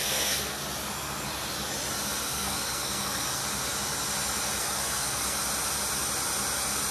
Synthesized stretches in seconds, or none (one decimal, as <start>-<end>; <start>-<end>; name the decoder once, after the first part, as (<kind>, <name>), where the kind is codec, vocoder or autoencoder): 0.0-0.6 (codec, SNAC); 2.3-3.4; 4.6-5.4